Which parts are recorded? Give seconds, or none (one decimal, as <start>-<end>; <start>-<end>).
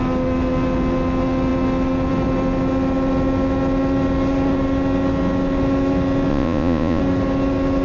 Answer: 0.0-6.3; 7.0-7.8